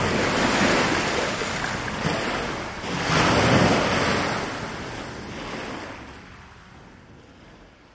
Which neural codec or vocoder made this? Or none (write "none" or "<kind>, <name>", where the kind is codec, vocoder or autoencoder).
none